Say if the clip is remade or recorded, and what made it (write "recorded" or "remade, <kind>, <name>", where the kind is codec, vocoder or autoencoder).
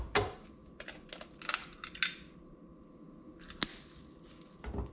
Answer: recorded